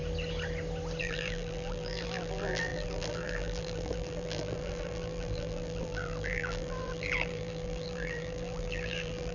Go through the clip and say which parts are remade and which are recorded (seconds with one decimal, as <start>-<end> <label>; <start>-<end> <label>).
0.0-1.0 recorded; 1.0-9.3 remade